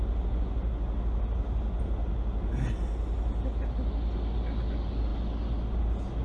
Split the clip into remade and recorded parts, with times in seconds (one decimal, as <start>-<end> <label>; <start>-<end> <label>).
0.0-6.2 recorded